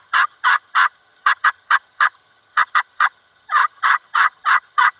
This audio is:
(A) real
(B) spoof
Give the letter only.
B